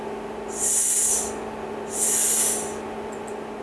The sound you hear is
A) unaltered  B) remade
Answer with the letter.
A